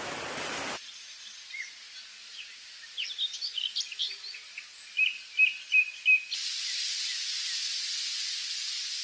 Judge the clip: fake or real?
real